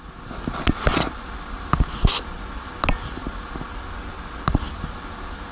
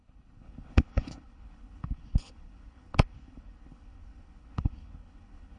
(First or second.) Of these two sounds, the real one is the first